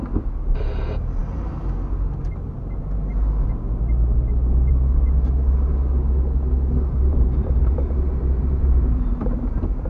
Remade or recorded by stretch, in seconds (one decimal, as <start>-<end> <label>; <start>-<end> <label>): 0.0-7.1 recorded; 7.1-9.1 remade; 9.1-9.9 recorded